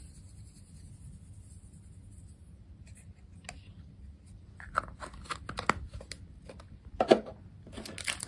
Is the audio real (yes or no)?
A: yes